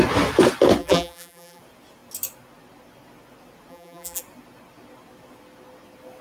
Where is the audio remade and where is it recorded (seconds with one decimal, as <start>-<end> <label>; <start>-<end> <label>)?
0.0-0.8 recorded; 0.8-1.6 remade; 1.6-3.7 recorded; 3.7-4.2 remade; 4.2-6.2 recorded